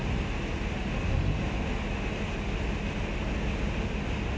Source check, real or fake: real